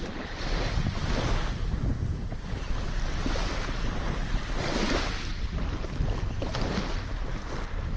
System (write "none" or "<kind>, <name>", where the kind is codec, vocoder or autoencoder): none